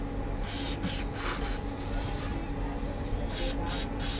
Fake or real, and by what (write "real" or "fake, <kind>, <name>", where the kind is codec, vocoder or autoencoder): real